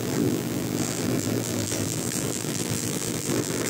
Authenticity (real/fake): fake